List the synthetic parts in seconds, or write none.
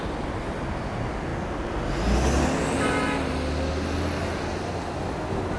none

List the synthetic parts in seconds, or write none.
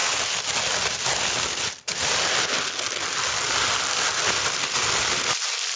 none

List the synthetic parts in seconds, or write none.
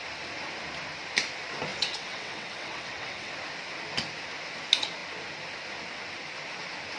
1.7-3.3 (vocoder, WaveNeXt)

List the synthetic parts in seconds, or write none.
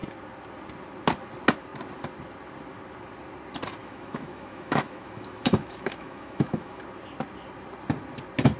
3.8-6.8 (autoencoder, DAC-VAE)